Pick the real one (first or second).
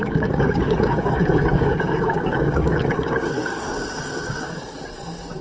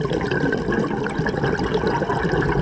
second